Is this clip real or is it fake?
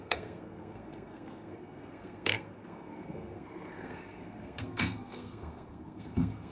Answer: fake